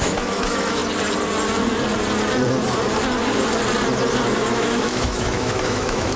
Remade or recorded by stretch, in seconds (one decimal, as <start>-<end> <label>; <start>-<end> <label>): 0.0-0.8 remade; 0.8-4.5 recorded; 4.5-6.2 remade